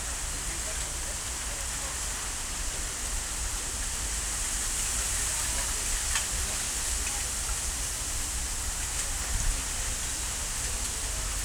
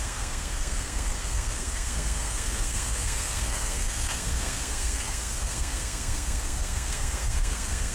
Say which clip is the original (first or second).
first